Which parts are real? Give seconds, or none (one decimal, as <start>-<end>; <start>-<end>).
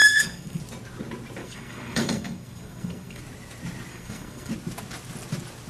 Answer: 0.6-1.4; 3.2-3.9; 4.5-5.7